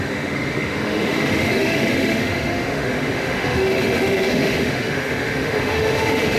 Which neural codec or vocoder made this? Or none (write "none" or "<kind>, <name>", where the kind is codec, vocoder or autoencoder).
autoencoder, DAC-VAE